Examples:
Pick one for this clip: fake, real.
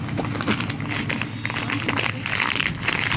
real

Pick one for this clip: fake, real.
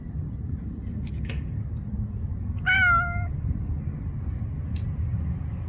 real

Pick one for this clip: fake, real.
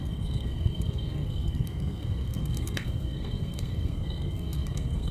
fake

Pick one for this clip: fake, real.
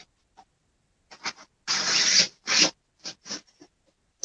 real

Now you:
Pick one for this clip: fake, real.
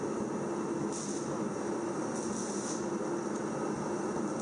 real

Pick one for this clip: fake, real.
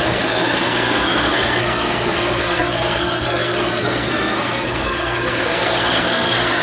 fake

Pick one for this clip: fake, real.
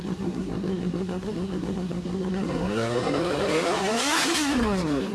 fake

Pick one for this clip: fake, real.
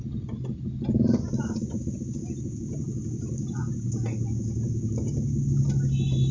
real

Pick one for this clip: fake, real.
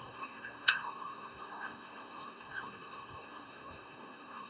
fake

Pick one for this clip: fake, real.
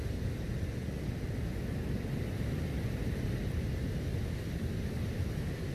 real